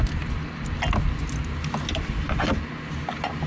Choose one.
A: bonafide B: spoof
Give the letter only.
A